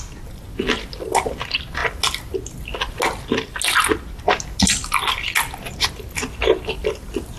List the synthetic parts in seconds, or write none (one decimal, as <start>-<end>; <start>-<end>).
none

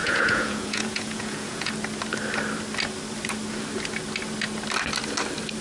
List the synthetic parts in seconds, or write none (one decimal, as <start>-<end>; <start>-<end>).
0.0-1.7

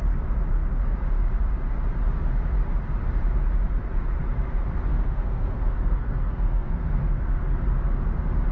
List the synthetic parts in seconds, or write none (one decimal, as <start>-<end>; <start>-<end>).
4.9-7.4

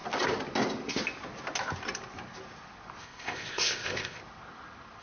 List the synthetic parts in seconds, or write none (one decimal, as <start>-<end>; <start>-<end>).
3.0-4.2

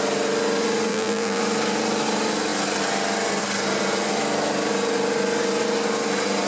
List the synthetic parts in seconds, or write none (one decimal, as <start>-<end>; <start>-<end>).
0.9-1.4

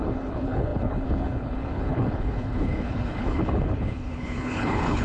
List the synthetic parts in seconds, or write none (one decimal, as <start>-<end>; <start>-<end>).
0.0-5.0

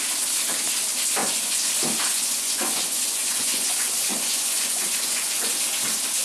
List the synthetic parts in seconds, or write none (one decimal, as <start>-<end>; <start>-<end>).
1.2-1.7; 2.1-5.5

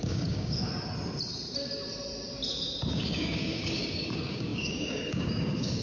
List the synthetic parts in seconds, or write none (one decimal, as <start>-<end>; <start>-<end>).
0.0-0.7; 2.9-5.8